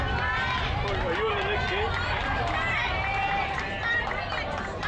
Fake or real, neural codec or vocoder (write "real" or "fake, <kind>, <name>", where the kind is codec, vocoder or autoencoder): real